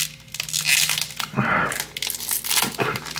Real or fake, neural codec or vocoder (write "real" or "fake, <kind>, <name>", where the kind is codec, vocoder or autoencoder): real